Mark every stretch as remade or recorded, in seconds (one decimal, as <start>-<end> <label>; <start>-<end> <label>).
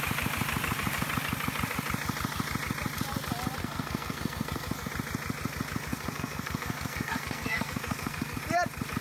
0.0-3.6 recorded; 3.6-4.9 remade; 4.9-5.9 recorded; 5.9-8.4 remade; 8.4-9.0 recorded